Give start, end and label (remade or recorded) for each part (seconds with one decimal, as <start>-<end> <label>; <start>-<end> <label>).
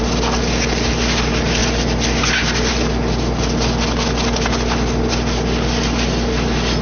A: 0.0-6.8 recorded